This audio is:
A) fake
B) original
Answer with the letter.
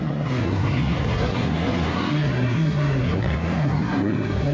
A